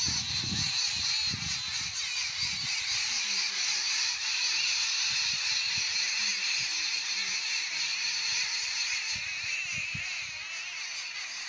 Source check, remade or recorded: recorded